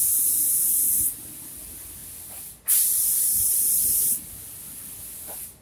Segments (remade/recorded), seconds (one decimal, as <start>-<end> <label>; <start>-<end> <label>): 0.0-5.6 recorded